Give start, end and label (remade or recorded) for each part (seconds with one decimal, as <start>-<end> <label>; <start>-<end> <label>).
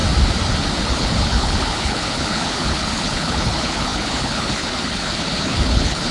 0.0-0.8 recorded; 0.8-6.1 remade